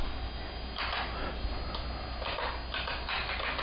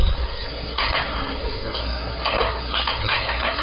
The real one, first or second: first